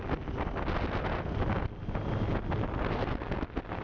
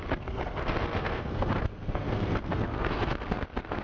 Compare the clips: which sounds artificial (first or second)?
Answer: second